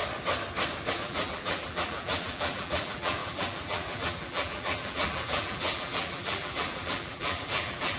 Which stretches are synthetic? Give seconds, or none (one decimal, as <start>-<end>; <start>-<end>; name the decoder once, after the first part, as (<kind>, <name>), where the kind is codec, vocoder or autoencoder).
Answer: 0.9-8.0 (vocoder, BigVGAN v2)